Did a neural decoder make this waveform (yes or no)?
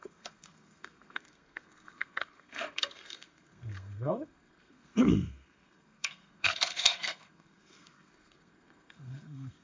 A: yes